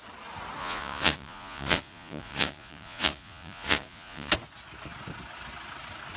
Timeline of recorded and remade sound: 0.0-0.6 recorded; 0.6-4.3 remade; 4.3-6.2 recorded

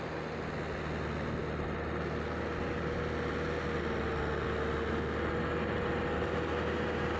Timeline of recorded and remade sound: 0.0-7.2 recorded

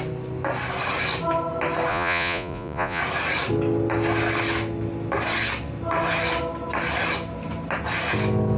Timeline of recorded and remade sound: 0.0-1.9 recorded; 1.9-3.0 remade; 3.0-8.6 recorded

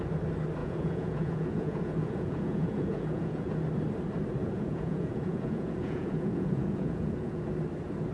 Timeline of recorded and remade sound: 0.0-0.6 recorded; 0.6-3.5 remade; 3.5-4.4 recorded; 4.4-7.5 remade; 7.5-8.1 recorded

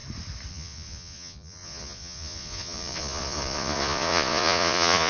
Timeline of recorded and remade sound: 0.0-0.5 recorded; 0.5-5.1 remade

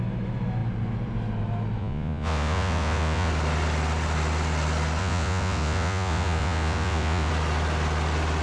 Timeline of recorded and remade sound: 0.0-1.8 recorded; 1.8-3.3 remade; 3.3-5.0 recorded; 5.0-7.3 remade; 7.3-8.4 recorded